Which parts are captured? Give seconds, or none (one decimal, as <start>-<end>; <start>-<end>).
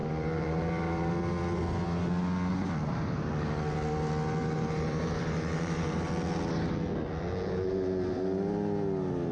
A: 1.1-2.5; 3.3-4.4; 6.1-9.3